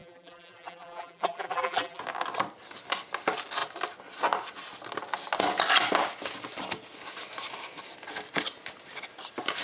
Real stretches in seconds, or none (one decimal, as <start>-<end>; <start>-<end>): 2.0-9.6